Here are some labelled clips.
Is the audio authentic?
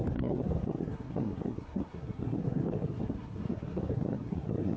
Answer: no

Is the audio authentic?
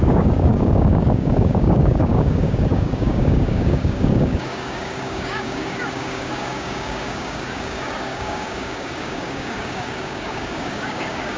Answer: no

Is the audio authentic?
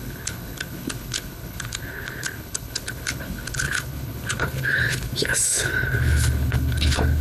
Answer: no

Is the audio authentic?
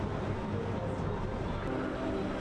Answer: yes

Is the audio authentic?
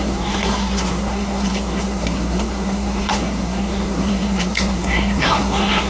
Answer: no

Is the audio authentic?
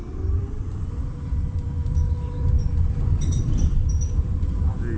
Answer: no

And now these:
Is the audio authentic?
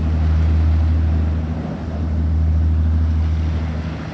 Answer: yes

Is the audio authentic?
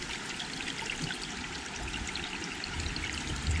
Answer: yes